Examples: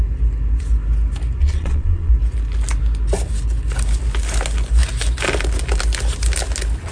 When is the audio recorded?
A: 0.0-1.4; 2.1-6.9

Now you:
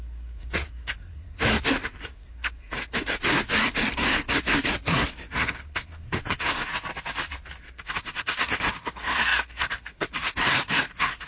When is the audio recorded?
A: 6.7-7.6

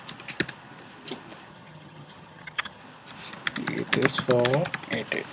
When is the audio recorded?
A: 0.0-1.5; 2.8-5.3

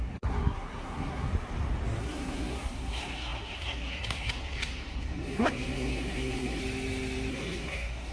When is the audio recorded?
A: 1.3-2.0; 6.6-7.3